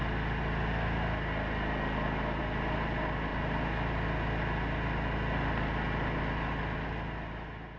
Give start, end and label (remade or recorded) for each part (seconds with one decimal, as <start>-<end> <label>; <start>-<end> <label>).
0.0-3.3 recorded; 3.3-3.9 remade; 3.9-7.8 recorded

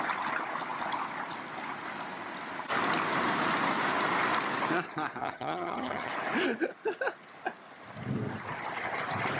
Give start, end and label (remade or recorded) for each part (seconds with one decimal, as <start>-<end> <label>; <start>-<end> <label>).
0.0-5.2 recorded; 5.2-6.1 remade; 6.1-9.4 recorded

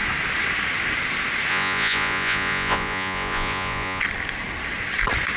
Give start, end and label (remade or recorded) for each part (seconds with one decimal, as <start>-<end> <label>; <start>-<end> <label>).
0.0-1.5 recorded; 1.5-4.0 remade; 4.0-5.4 recorded

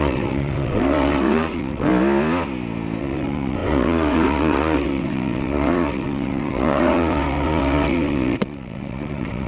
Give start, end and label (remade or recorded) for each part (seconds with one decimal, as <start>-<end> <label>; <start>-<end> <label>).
0.0-1.9 remade; 1.9-3.0 recorded; 3.0-9.5 remade